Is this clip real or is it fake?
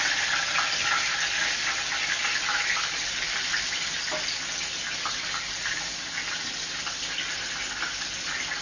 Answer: real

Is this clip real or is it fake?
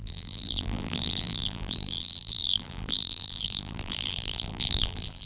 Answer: fake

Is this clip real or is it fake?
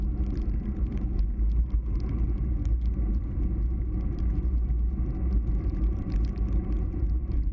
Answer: fake